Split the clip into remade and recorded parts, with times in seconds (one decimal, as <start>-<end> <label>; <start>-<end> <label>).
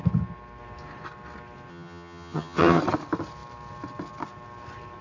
0.0-1.7 recorded; 1.7-2.8 remade; 2.8-5.0 recorded